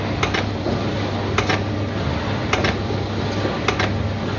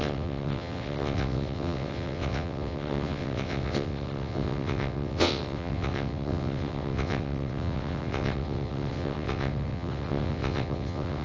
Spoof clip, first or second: second